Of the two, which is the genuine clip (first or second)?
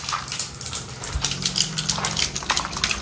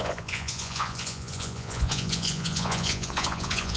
first